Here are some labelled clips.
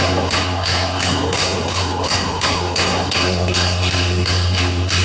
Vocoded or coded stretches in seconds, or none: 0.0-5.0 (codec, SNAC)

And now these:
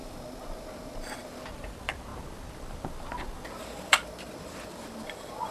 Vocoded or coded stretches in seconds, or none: 2.1-5.5 (vocoder, BigVGAN v2)

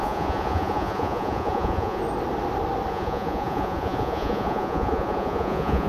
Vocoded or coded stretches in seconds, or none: 0.0-2.0 (vocoder, Vocos); 2.9-5.9

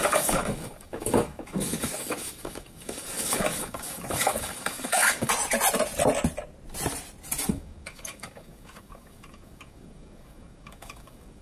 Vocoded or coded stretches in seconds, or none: 0.0-5.3 (codec, DAC); 7.5-11.4

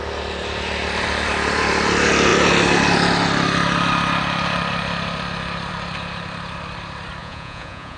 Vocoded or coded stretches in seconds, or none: 7.2-8.0 (vocoder, Vocos)

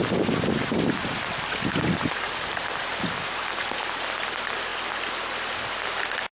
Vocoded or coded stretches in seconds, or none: 0.0-3.1 (vocoder, BigVGAN v2)